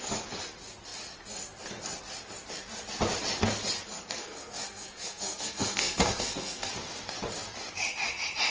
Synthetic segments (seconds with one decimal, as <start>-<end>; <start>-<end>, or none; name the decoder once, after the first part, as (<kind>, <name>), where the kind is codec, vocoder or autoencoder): 4.2-6.7 (codec, SNAC)